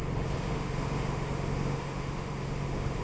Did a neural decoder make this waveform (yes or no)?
yes